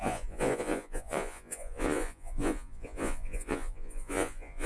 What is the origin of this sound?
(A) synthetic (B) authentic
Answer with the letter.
A